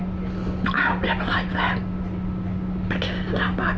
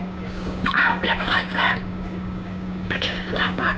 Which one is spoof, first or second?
second